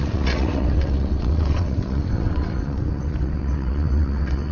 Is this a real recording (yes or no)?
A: no